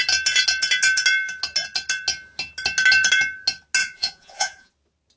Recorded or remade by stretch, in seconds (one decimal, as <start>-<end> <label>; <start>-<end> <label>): 0.0-3.8 recorded; 3.8-4.7 remade; 4.7-5.2 recorded